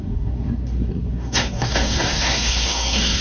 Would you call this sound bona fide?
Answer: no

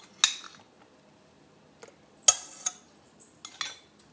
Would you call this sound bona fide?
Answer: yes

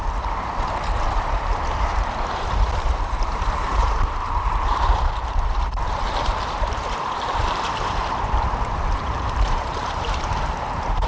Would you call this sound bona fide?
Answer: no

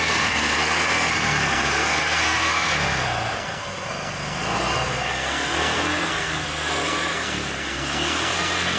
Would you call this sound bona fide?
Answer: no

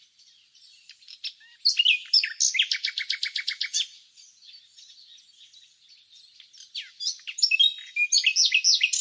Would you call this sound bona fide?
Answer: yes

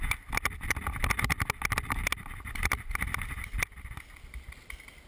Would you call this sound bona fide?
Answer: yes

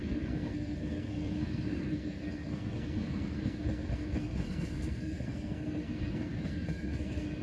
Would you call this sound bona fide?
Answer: no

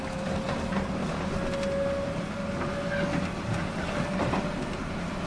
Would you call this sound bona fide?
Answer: yes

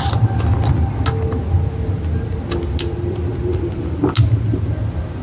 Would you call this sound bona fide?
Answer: yes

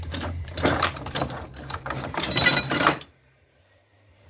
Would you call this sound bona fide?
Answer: no